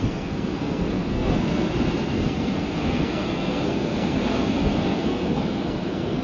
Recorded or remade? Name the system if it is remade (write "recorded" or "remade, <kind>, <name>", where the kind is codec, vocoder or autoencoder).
remade, codec, SNAC